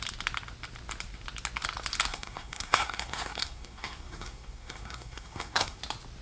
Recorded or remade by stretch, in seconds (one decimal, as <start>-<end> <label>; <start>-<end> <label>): 0.0-2.1 recorded; 2.1-5.8 remade; 5.8-6.2 recorded